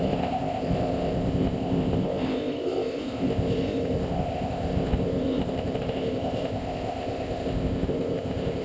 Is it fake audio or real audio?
fake